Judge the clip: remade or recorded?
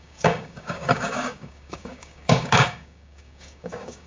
remade